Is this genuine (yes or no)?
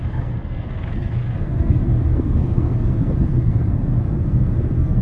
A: no